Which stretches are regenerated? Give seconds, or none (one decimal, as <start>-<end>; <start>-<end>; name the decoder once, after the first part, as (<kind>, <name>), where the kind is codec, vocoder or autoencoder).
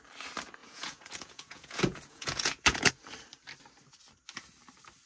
0.6-2.9 (vocoder, Vocos)